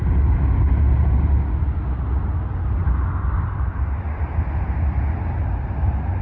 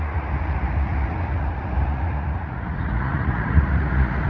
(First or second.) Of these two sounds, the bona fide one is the first